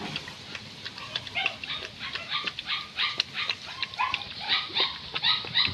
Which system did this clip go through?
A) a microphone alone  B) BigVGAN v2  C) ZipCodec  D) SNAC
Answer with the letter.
A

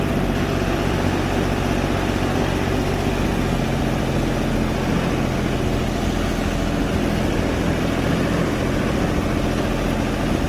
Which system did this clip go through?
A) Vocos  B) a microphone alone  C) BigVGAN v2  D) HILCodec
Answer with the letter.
B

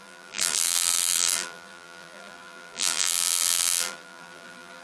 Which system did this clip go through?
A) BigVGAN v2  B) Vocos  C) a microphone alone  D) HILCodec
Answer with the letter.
A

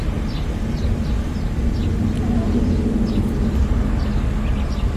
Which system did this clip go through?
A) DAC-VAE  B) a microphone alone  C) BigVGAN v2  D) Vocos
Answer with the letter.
B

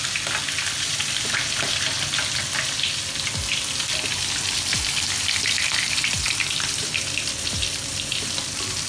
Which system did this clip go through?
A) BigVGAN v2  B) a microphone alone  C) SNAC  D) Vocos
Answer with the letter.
A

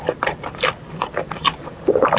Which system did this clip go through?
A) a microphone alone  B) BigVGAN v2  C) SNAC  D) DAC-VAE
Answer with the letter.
B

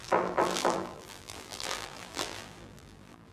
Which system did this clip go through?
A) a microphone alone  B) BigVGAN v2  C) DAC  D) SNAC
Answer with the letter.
B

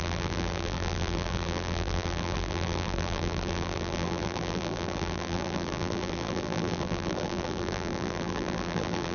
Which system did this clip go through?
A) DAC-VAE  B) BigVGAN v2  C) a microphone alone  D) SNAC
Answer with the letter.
B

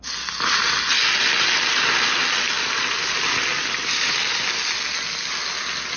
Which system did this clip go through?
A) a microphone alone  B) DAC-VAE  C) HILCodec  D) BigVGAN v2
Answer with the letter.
A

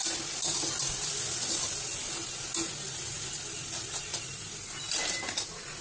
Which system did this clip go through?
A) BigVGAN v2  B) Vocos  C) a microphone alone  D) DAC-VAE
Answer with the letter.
C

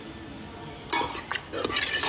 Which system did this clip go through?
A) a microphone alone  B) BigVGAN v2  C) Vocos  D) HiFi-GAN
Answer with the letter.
B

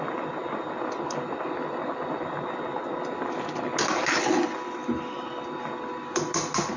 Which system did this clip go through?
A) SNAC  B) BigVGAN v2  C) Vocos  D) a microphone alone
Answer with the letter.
D